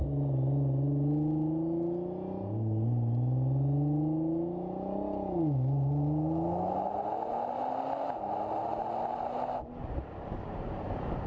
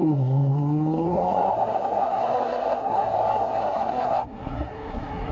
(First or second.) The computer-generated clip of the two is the second